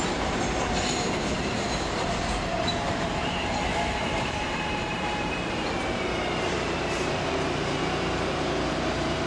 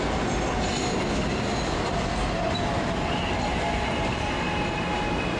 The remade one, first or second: first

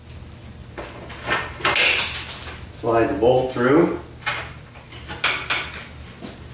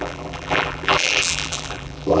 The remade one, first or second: second